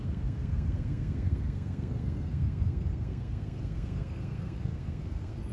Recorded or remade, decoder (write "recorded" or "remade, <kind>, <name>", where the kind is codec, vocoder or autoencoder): remade, codec, SNAC